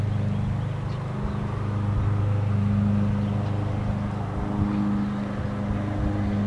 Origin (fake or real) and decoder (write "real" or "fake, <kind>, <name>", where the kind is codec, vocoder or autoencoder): real